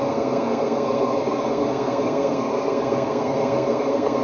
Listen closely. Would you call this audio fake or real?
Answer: fake